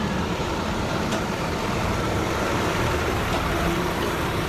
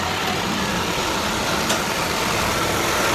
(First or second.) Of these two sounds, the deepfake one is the first